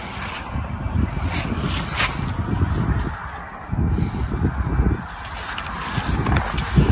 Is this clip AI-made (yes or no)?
no